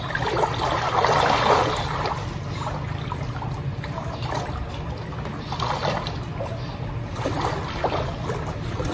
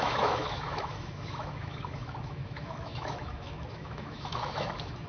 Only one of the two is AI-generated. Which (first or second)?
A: second